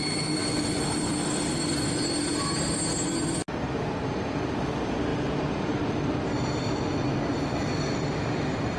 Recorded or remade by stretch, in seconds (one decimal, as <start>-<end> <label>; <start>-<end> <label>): 0.0-8.8 recorded

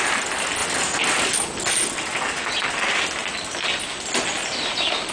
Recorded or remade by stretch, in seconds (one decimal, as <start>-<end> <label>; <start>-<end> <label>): 0.0-5.1 recorded